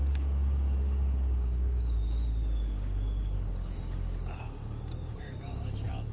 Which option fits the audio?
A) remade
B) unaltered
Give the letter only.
A